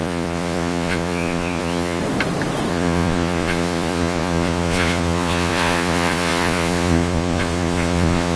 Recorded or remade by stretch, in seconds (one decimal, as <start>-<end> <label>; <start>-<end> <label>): 0.0-2.0 remade; 2.0-2.7 recorded; 2.7-8.4 remade